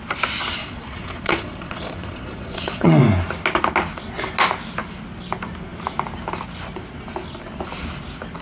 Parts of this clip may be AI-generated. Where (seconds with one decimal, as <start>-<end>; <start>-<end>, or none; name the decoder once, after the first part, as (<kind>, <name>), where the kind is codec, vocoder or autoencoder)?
0.6-3.0 (vocoder, Vocos)